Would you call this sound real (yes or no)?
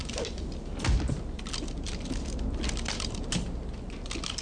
yes